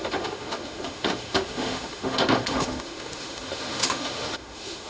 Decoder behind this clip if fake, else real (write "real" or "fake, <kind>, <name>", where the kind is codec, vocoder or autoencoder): fake, autoencoder, DAC-VAE